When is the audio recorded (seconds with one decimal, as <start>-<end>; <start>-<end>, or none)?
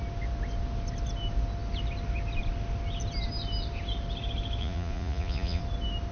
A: 0.0-4.6; 5.6-6.1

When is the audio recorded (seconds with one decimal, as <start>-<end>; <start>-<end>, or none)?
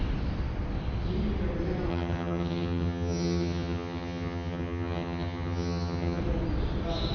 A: 0.0-1.9; 6.2-7.1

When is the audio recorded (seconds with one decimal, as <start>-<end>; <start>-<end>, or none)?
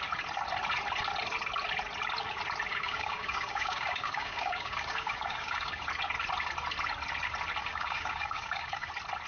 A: 0.0-2.7; 5.8-7.6; 8.9-9.3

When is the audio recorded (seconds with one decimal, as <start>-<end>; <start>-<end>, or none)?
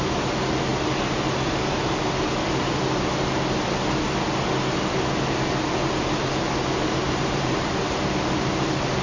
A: 0.0-7.0; 8.0-9.0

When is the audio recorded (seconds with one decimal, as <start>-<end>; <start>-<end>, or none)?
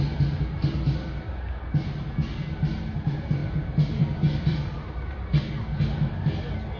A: 0.0-3.4; 5.8-6.8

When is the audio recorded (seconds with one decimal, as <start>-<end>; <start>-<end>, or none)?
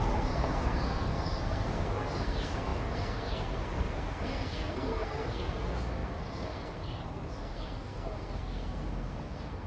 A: none